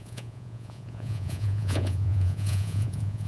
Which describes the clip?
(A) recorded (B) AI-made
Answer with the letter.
B